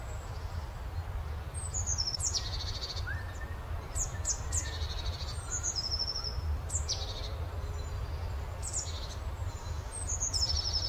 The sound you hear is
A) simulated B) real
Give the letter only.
B